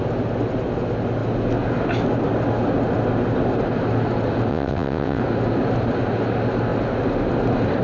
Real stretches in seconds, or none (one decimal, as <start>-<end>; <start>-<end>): 0.0-4.5; 5.2-7.8